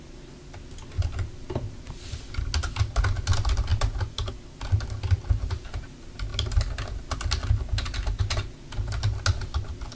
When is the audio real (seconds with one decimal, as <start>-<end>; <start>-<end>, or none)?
0.0-10.0

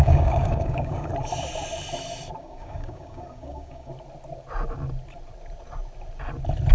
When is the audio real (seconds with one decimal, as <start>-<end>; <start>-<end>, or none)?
1.1-2.4; 3.9-6.7

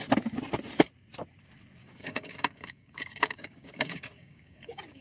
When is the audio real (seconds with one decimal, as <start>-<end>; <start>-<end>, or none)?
0.0-1.8

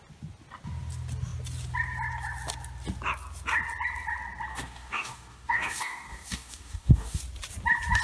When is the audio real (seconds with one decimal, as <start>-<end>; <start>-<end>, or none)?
0.0-4.5; 7.2-8.0

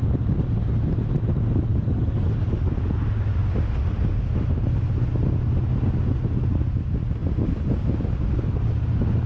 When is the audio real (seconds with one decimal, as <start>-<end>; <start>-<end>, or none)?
0.0-1.7; 2.7-9.3

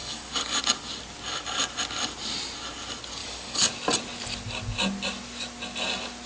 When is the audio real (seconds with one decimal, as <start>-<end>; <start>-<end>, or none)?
0.6-3.2; 3.7-6.3

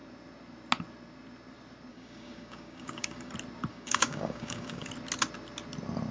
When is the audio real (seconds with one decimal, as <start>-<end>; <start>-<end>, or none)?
0.0-1.9; 3.3-3.7; 4.9-6.1